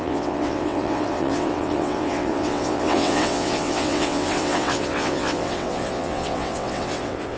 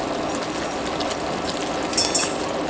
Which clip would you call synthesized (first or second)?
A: first